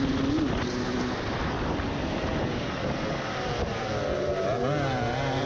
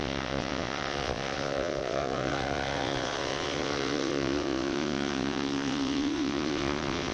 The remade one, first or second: second